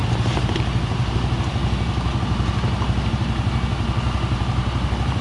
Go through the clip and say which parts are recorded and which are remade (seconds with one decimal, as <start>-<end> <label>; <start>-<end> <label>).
0.0-5.2 recorded